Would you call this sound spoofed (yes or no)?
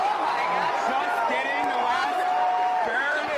no